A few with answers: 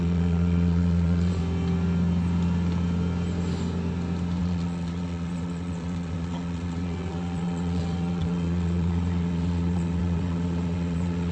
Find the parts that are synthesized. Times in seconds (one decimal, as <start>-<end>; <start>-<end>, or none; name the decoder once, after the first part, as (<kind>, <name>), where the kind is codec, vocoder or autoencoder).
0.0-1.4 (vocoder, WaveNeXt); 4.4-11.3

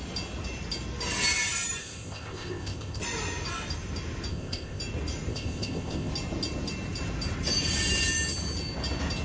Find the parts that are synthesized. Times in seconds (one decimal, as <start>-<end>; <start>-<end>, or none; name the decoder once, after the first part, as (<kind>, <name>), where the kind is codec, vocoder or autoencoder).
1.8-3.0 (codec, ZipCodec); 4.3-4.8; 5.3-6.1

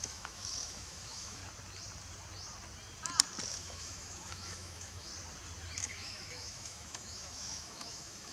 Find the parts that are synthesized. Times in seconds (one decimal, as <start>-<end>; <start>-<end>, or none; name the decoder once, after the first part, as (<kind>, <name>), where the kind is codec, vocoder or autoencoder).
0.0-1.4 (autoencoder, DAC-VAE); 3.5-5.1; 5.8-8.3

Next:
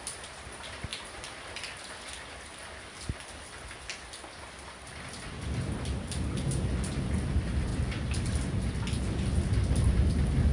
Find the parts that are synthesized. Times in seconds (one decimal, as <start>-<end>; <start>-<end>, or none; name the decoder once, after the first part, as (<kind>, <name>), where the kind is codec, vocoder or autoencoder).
none

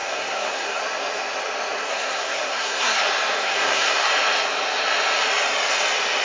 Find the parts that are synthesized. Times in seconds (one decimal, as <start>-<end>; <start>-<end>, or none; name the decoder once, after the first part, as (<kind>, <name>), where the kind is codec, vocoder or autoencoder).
0.0-0.8 (codec, SNAC); 1.9-3.0; 3.4-4.1